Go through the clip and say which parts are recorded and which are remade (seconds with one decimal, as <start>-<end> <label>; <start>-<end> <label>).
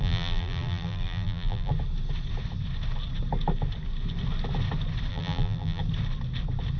0.0-1.7 remade; 1.7-5.1 recorded; 5.1-5.8 remade; 5.8-6.8 recorded